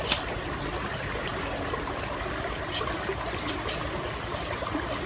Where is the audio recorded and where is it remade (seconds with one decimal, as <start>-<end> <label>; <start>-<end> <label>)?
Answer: 0.0-5.1 recorded